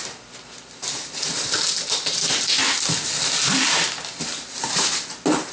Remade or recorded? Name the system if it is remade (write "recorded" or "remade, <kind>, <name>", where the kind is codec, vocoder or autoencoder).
recorded